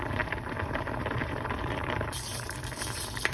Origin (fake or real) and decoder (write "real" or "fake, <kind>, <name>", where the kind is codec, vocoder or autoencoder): fake, vocoder, BigVGAN v2